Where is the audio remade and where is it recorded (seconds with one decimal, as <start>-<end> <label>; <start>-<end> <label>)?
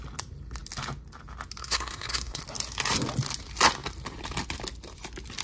0.0-1.6 recorded; 1.6-2.4 remade; 2.4-5.4 recorded